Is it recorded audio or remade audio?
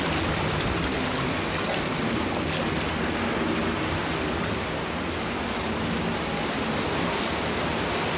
recorded